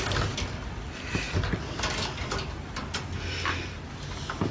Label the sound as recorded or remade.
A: recorded